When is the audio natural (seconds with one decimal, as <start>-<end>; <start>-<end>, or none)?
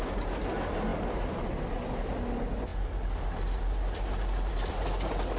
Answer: 0.0-5.4